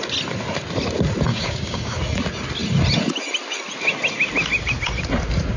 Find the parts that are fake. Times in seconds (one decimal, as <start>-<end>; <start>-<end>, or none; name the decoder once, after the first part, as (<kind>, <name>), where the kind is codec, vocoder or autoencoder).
1.3-2.0 (codec, DAC)